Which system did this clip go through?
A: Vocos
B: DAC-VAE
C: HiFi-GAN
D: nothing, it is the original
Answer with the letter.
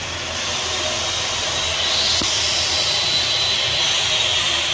D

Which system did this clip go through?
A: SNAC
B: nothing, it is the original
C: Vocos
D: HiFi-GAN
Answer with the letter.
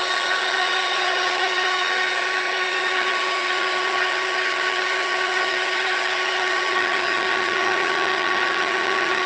D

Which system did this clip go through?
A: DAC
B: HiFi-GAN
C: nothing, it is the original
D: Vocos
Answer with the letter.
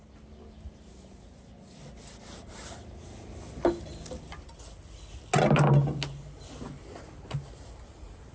C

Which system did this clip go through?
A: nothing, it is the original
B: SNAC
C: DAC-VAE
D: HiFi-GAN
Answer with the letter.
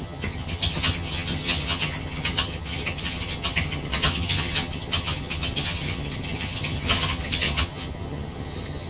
D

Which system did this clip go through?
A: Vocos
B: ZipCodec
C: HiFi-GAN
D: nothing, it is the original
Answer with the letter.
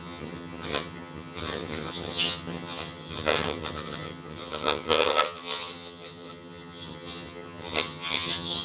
C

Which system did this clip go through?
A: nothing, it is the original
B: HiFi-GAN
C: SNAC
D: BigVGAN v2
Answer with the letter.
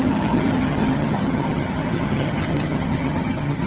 B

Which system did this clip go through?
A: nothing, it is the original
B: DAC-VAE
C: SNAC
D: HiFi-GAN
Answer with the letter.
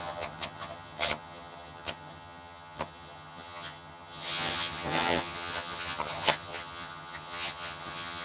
D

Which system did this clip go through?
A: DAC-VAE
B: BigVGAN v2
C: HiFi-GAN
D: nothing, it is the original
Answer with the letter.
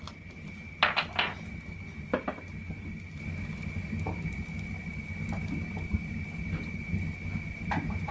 D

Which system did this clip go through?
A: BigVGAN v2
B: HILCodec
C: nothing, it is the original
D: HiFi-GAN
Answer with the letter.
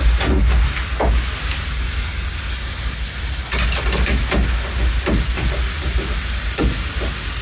C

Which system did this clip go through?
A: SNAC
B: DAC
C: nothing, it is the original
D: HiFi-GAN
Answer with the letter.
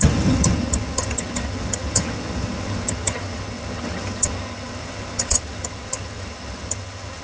D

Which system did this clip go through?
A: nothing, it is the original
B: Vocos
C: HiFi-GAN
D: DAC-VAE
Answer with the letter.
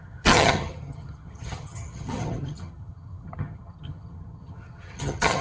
C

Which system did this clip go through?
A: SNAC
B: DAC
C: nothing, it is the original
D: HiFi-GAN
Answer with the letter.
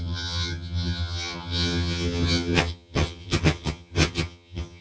D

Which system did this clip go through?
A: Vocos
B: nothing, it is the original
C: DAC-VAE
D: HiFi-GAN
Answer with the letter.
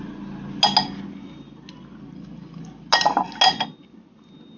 B